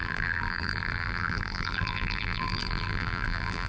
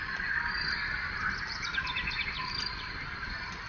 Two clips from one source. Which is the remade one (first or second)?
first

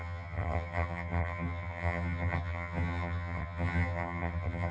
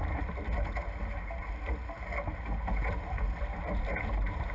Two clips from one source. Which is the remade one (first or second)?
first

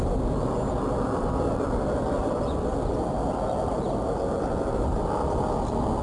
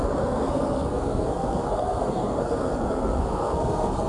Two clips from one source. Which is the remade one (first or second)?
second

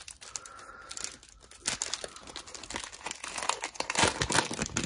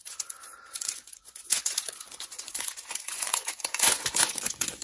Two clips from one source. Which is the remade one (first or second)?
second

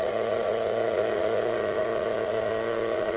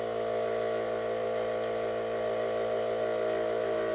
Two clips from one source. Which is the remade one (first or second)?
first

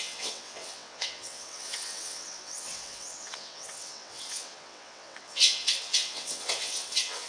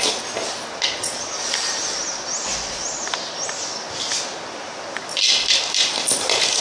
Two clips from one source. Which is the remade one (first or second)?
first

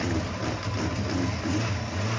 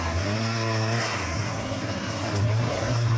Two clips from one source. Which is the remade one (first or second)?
second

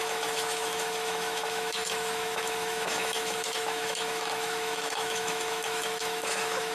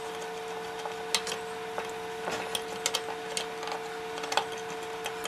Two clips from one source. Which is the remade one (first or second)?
first